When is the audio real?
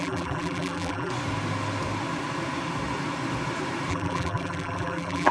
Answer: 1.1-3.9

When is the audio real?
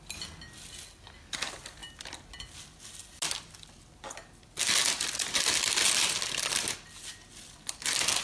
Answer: 0.0-8.2